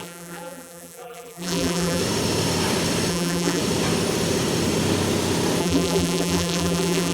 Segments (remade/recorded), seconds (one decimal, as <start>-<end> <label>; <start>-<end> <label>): 0.0-2.0 remade; 2.0-3.1 recorded; 3.1-3.6 remade; 3.6-5.6 recorded; 5.6-7.1 remade

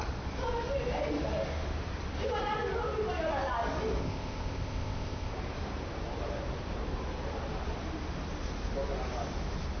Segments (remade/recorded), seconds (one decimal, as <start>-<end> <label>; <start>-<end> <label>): 0.0-4.0 recorded; 4.0-5.3 remade; 5.3-9.8 recorded

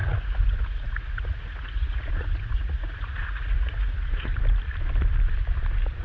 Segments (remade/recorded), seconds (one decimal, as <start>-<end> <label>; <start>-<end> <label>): 0.0-4.3 remade; 4.3-6.0 recorded

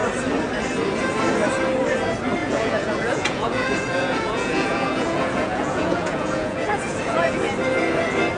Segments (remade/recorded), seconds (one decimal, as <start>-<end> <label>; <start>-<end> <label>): 0.0-2.4 recorded; 2.4-7.4 remade; 7.4-8.4 recorded

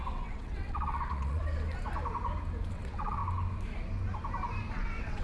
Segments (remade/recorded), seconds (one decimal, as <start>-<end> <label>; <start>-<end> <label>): 0.0-1.4 remade; 1.4-2.7 recorded; 2.7-3.2 remade; 3.2-4.7 recorded; 4.7-5.2 remade

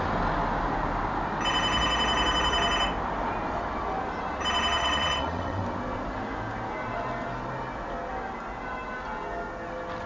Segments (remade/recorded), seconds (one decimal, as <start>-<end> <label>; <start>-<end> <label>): 0.0-4.8 recorded; 4.8-5.6 remade; 5.6-10.1 recorded

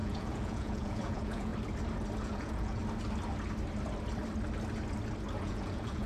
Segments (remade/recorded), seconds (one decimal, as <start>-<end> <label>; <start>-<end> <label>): 0.0-1.5 remade; 1.5-2.2 recorded; 2.2-2.8 remade; 2.8-5.4 recorded; 5.4-6.1 remade

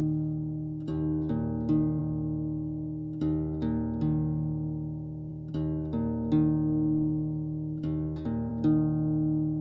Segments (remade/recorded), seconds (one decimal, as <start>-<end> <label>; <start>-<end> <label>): 0.0-9.6 recorded